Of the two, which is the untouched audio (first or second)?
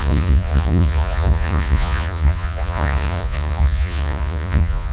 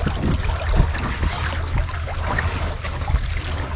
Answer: second